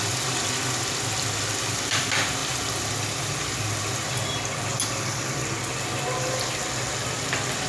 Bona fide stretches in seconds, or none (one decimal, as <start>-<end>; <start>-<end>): 0.0-7.7